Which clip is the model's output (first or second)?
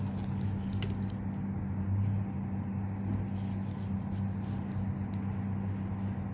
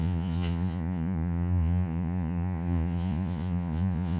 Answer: second